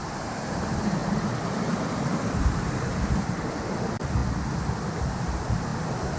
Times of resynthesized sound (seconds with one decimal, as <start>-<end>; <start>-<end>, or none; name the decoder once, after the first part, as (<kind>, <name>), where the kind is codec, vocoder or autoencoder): 0.0-4.2 (vocoder, BigVGAN v2); 5.2-5.7